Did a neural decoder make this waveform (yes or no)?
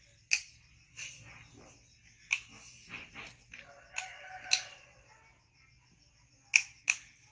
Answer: no